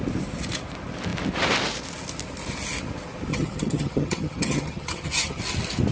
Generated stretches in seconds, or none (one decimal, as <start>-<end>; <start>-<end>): 3.3-5.4